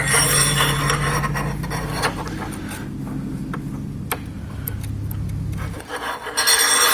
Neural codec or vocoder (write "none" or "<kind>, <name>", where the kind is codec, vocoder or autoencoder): none